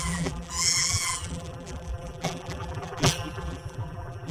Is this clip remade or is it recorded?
remade